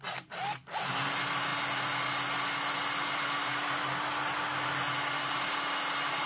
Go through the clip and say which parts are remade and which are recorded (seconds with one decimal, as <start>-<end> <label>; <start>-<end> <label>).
0.0-6.3 recorded